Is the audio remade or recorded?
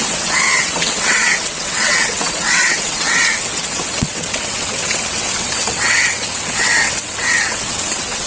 remade